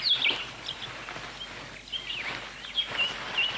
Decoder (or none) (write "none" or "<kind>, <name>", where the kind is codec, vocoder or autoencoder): none